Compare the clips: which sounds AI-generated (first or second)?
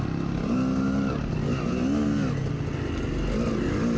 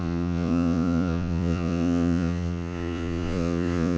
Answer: second